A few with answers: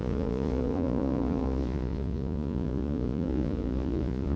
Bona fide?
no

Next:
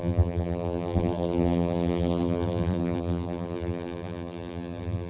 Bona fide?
no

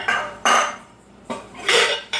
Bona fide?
no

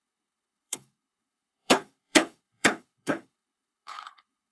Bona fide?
no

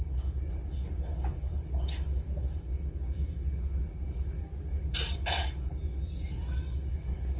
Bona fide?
yes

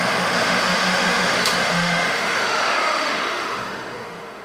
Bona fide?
no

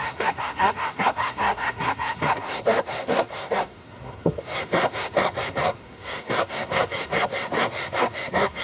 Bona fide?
no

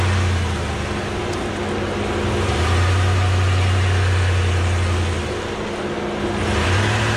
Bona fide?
yes